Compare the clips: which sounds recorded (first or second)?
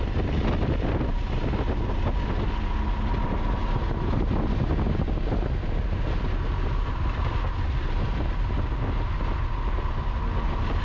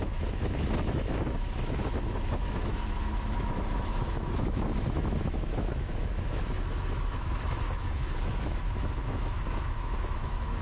first